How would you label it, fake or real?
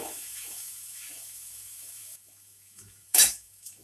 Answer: fake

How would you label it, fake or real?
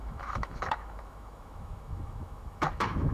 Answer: fake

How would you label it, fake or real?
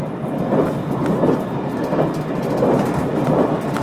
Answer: real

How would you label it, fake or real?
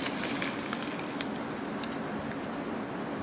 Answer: real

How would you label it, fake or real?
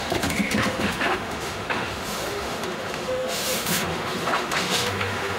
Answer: fake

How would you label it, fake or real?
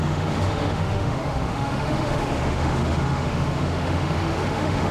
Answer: fake